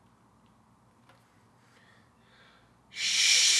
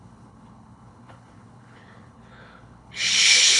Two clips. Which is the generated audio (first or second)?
second